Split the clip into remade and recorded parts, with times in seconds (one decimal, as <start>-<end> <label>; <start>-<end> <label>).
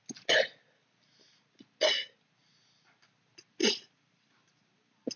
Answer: 0.0-3.6 recorded; 3.6-4.6 remade; 4.6-5.2 recorded